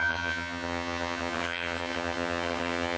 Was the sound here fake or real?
fake